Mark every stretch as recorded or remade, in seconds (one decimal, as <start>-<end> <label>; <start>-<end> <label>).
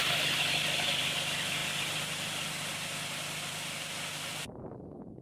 0.0-1.6 remade; 1.6-3.8 recorded; 3.8-5.2 remade